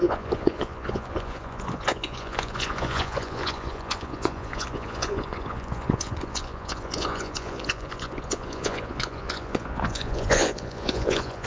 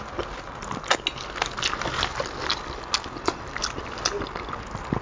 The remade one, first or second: first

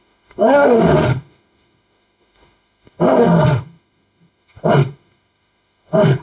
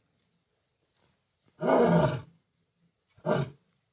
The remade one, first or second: first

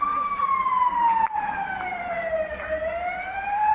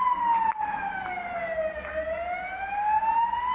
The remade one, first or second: first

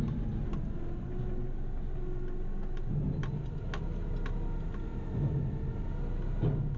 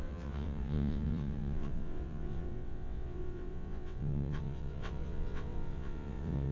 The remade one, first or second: second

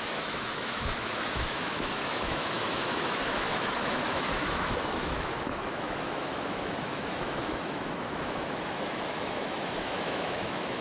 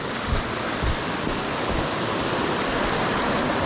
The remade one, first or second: first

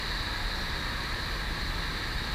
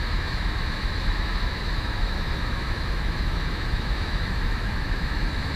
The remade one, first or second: second